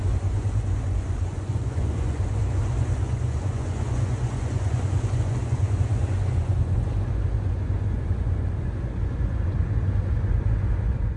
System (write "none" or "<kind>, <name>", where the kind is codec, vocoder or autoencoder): vocoder, Vocos